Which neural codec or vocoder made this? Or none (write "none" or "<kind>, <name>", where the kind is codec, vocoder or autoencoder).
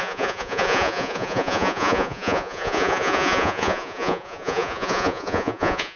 vocoder, Vocos